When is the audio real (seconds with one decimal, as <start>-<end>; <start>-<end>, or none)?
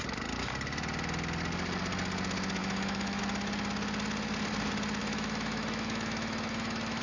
0.0-2.6; 3.2-5.0